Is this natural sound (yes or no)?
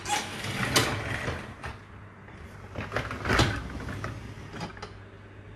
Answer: yes